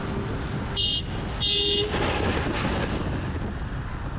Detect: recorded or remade recorded